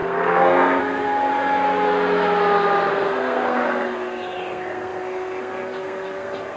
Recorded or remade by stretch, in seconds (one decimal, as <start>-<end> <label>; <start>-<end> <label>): 0.0-1.3 remade; 1.3-2.9 recorded; 2.9-6.6 remade

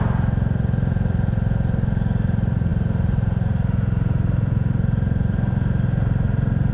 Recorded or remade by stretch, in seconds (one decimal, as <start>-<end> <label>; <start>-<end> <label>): 0.0-2.7 recorded; 2.7-6.7 remade

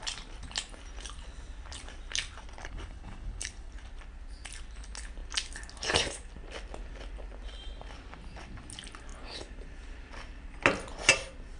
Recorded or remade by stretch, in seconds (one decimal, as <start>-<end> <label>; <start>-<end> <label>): 0.0-2.6 recorded; 2.6-3.7 remade; 3.7-11.6 recorded

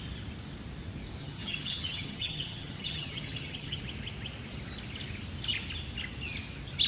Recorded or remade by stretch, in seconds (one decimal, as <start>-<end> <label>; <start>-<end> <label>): 0.0-1.2 recorded; 1.2-3.8 remade; 3.8-6.9 recorded

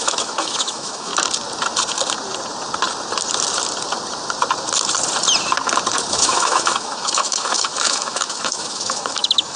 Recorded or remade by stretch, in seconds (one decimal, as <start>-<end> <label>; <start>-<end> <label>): 0.0-1.1 remade; 1.1-6.1 recorded; 6.1-9.6 remade

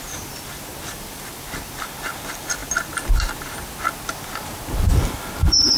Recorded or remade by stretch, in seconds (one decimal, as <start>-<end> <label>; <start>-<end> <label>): 0.0-5.8 recorded

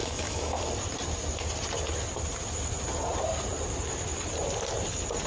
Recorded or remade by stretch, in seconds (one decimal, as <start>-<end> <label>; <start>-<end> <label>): 0.0-0.6 remade; 0.6-5.3 recorded